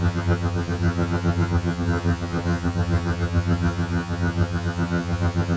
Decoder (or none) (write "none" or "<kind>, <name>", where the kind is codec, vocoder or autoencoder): vocoder, HiFi-GAN